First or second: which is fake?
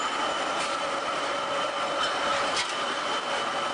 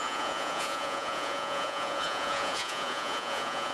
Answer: second